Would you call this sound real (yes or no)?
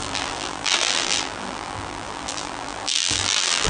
no